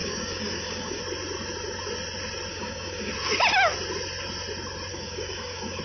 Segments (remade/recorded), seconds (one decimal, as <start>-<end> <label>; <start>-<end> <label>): 0.0-1.0 remade; 1.0-2.5 recorded; 2.5-3.1 remade; 3.1-4.9 recorded; 4.9-5.8 remade